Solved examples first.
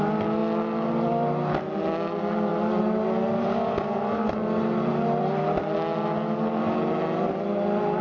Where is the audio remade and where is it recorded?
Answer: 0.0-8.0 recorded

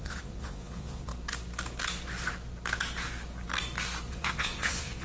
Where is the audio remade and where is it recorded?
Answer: 0.0-1.1 remade; 1.1-4.1 recorded; 4.1-5.0 remade

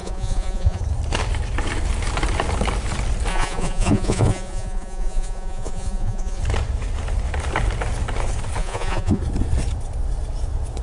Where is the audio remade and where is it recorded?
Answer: 0.0-0.8 remade; 0.8-3.3 recorded; 3.3-6.4 remade; 6.4-8.6 recorded; 8.6-9.2 remade; 9.2-10.8 recorded